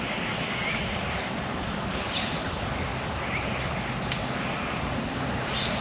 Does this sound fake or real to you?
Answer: real